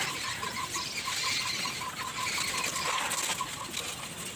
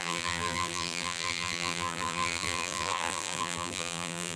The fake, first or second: second